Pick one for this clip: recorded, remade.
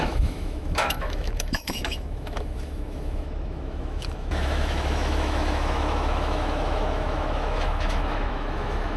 remade